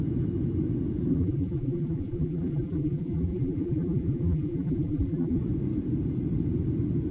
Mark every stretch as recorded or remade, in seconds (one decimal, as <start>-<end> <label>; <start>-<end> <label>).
0.0-1.1 recorded; 1.1-5.4 remade; 5.4-7.1 recorded